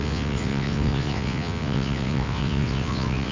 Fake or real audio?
fake